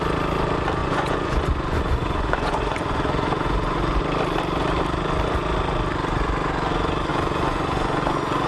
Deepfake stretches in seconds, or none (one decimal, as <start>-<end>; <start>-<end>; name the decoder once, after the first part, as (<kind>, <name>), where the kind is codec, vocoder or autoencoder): 0.8-4.0 (vocoder, Vocos); 7.1-8.5